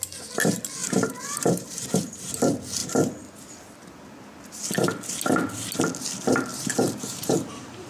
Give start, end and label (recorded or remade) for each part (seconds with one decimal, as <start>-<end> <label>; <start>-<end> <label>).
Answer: 0.0-0.8 recorded; 0.8-2.3 remade; 2.3-6.5 recorded; 6.5-7.9 remade

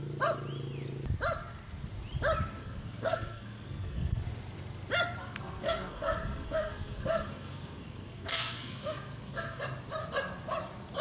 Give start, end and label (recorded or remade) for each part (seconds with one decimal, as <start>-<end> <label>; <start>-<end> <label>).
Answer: 0.0-2.6 recorded; 2.6-4.2 remade; 4.2-5.2 recorded; 5.2-9.6 remade; 9.6-11.0 recorded

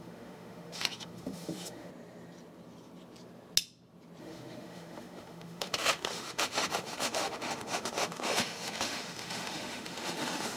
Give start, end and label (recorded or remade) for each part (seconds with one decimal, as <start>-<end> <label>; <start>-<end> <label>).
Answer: 0.0-1.9 remade; 1.9-4.2 recorded; 4.2-10.6 remade

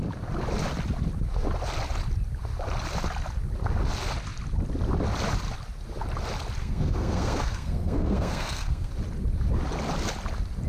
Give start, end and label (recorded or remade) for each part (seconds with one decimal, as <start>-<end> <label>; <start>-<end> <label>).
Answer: 0.0-6.6 recorded; 6.6-8.9 remade; 8.9-10.7 recorded

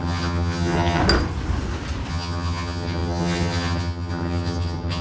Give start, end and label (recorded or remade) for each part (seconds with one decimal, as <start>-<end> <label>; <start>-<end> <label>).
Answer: 0.0-1.0 remade; 1.0-2.1 recorded; 2.1-5.0 remade

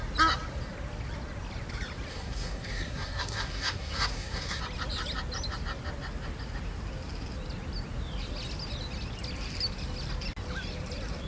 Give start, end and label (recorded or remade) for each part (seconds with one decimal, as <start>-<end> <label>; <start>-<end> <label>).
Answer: 0.0-2.1 recorded; 2.1-4.6 remade; 4.6-11.3 recorded